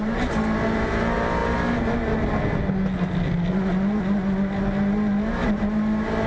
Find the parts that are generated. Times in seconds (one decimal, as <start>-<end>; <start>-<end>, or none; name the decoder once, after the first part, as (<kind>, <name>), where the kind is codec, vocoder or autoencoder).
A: none